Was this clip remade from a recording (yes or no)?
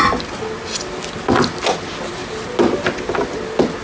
no